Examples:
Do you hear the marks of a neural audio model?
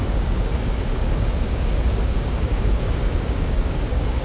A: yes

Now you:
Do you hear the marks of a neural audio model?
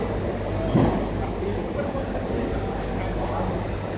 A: no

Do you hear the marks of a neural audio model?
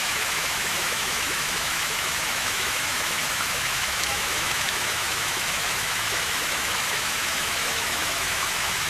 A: yes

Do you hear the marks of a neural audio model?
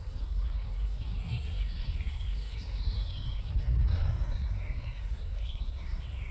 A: yes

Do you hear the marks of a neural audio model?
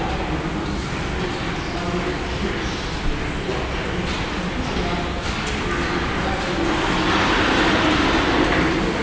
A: no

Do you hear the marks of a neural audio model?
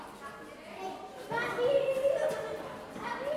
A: no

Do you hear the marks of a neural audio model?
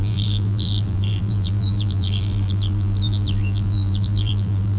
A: yes